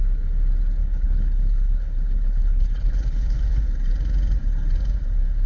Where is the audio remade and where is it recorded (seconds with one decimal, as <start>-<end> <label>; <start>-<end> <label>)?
0.0-0.8 recorded; 0.8-3.6 remade; 3.6-5.5 recorded